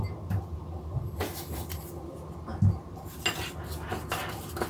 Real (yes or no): yes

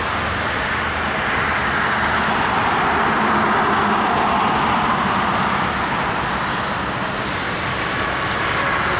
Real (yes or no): yes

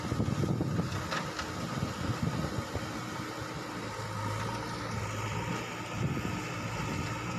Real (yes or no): yes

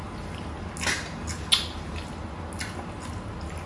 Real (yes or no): yes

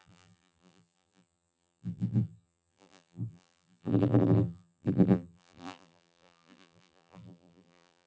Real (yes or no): no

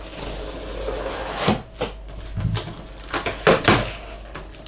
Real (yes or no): yes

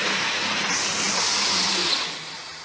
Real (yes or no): yes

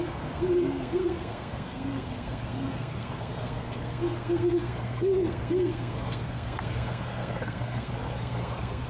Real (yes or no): no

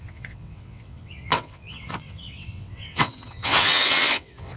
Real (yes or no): no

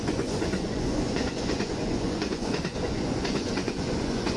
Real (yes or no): no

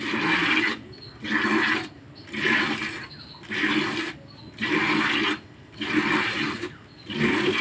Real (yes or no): yes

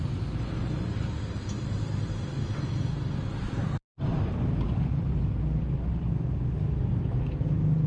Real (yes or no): yes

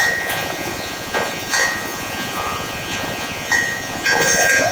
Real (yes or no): no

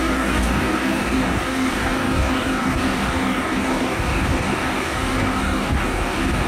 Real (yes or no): no